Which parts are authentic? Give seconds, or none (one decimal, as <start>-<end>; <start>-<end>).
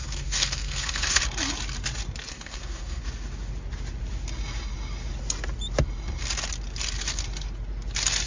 1.2-2.3; 3.0-8.3